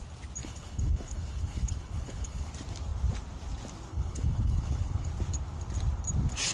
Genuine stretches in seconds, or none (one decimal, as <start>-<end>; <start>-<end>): 0.0-0.4; 2.5-3.9; 5.1-6.5

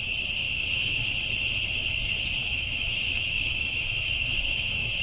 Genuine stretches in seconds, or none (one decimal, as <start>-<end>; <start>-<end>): 0.0-0.4; 1.1-2.4

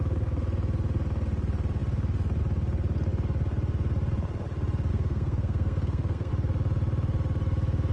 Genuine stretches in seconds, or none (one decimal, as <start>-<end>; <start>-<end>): 0.0-4.9; 6.3-7.9

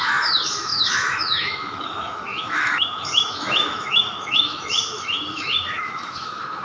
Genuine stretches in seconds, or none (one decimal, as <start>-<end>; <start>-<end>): none

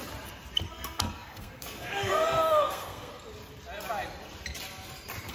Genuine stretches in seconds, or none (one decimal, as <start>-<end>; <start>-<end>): 0.0-0.7; 3.1-5.3

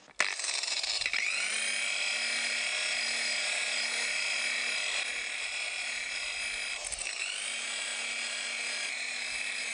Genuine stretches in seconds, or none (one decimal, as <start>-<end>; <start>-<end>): 0.0-9.7

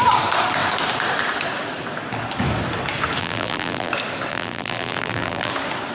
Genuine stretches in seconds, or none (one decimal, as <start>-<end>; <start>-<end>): 0.0-3.2; 3.9-4.3; 5.5-5.9

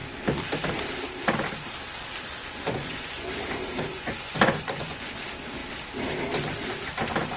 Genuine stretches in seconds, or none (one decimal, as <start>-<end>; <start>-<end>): 0.0-2.4; 3.3-3.9; 5.1-7.4